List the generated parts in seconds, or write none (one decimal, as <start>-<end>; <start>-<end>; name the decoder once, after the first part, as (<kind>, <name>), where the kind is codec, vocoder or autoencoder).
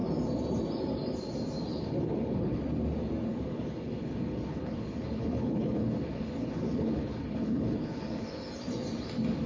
1.7-2.6 (codec, HILCodec); 3.3-8.5